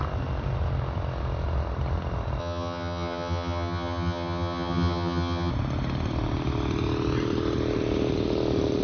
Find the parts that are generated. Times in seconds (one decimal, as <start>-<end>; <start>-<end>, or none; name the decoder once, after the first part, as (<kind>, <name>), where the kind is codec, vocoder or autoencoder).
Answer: 2.4-5.5 (vocoder, HiFi-GAN)